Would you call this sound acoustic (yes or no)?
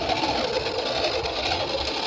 yes